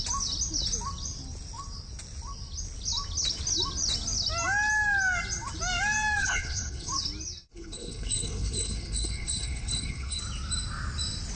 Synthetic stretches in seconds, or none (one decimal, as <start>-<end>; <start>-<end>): 6.2-6.9; 7.5-10.2